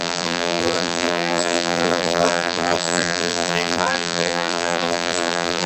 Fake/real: fake